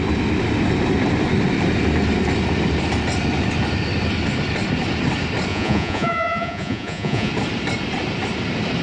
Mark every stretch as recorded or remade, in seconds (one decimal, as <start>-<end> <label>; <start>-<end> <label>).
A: 0.0-5.5 recorded; 5.5-7.3 remade; 7.3-8.8 recorded